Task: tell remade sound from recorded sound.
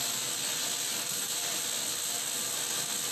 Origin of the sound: recorded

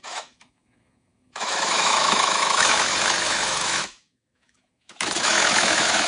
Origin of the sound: remade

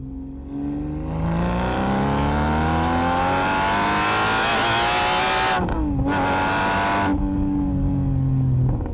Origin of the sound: recorded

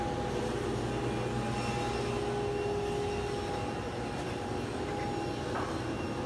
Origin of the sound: recorded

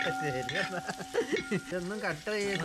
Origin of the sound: recorded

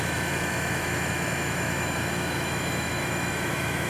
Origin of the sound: remade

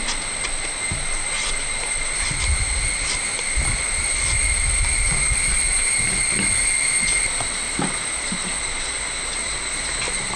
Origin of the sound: recorded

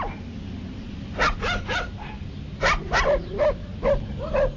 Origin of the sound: recorded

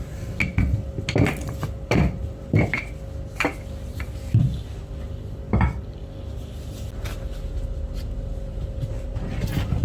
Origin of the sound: recorded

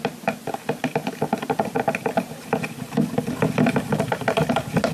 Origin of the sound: recorded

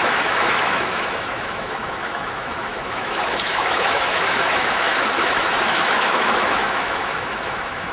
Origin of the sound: remade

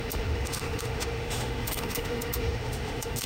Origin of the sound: remade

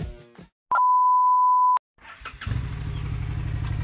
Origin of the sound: recorded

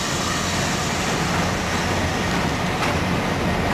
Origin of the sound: recorded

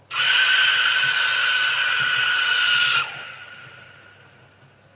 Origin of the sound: recorded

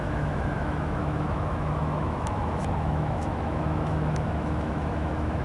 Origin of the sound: remade